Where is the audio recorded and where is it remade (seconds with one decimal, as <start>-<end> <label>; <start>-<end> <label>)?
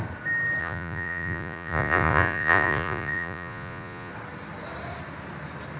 0.0-0.6 recorded; 0.6-4.1 remade; 4.1-5.8 recorded